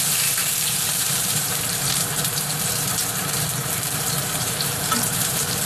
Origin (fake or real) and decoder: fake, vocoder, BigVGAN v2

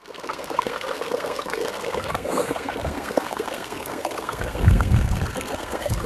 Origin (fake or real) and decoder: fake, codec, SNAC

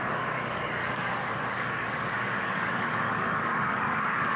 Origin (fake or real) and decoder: fake, codec, DAC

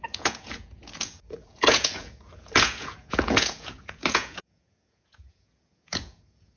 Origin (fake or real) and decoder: fake, vocoder, Vocos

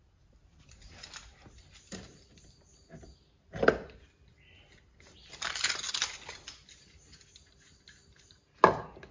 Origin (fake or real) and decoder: real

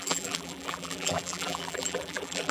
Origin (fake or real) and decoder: fake, vocoder, BigVGAN v2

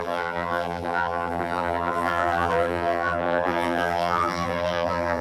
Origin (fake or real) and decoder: fake, vocoder, BigVGAN v2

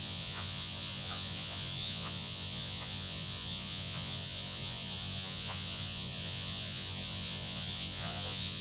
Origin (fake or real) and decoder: fake, vocoder, Vocos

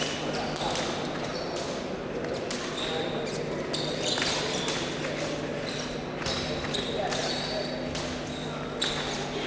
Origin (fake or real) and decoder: real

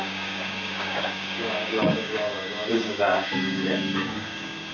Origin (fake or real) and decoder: fake, codec, DAC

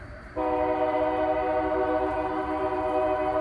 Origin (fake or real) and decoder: fake, vocoder, BigVGAN v2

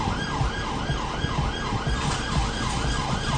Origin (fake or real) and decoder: fake, vocoder, BigVGAN v2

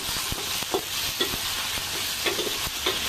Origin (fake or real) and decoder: real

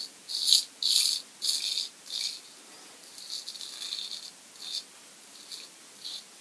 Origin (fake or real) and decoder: real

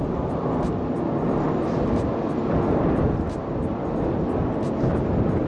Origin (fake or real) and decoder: real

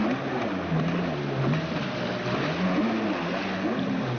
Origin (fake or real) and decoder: real